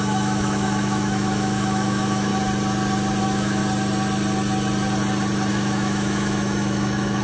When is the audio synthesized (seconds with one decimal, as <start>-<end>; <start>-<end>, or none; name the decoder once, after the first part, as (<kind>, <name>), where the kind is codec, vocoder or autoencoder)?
0.0-2.3 (autoencoder, DAC-VAE); 3.2-3.6; 5.5-7.2